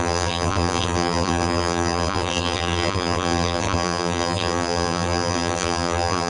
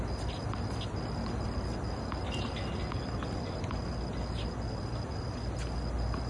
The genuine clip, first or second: second